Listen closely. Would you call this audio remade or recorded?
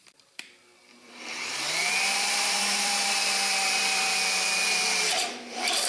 remade